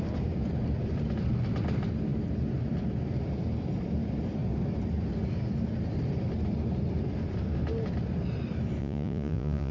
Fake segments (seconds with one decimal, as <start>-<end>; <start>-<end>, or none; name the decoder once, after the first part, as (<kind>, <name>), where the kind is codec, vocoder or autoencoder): 8.8-9.7 (vocoder, Vocos)